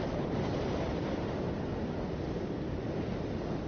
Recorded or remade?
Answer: recorded